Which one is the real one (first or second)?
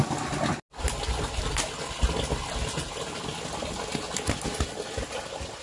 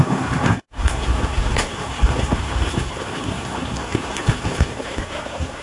first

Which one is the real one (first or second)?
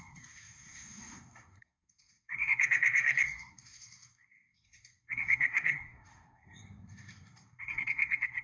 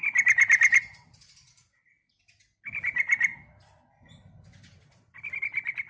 second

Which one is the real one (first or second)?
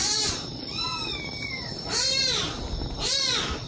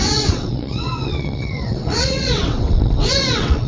first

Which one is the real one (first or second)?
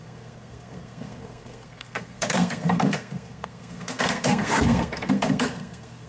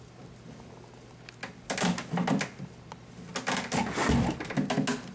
second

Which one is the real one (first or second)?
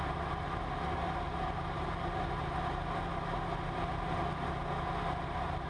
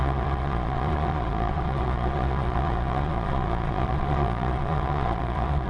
first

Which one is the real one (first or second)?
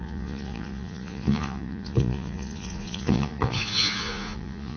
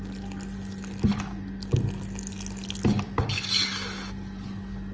second